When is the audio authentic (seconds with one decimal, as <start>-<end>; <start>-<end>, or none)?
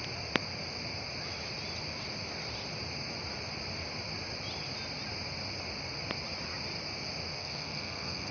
0.0-7.4